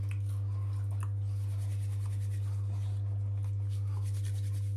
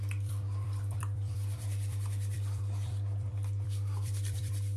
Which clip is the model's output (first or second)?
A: second